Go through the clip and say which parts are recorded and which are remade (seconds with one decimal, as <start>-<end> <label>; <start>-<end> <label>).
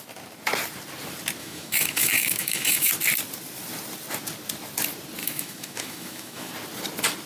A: 0.0-1.4 recorded; 1.4-2.9 remade; 2.9-5.2 recorded; 5.2-6.5 remade; 6.5-7.3 recorded